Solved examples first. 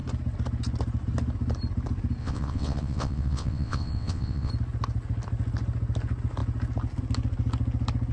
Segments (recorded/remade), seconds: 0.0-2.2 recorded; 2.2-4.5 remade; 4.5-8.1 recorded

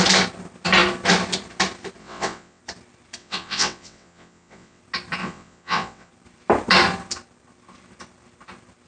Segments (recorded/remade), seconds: 0.0-2.0 recorded; 2.0-2.6 remade; 2.6-3.2 recorded; 3.2-4.8 remade; 4.8-5.2 recorded; 5.2-6.1 remade; 6.1-8.9 recorded

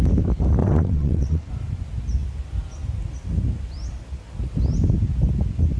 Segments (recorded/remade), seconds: 0.0-0.6 recorded; 0.6-1.5 remade; 1.5-5.8 recorded